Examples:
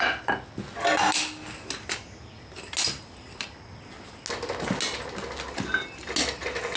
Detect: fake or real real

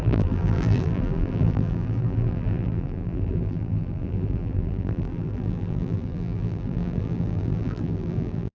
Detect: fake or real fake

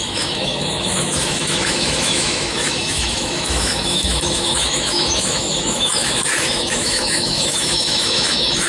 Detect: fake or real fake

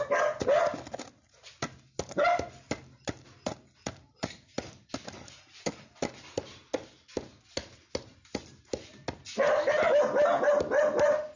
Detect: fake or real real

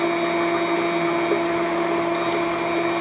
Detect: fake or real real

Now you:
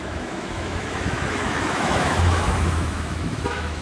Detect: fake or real fake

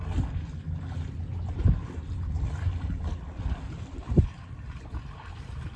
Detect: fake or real real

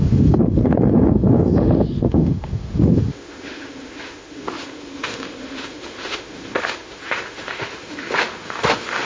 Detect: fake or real fake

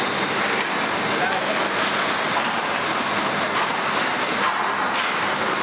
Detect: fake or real real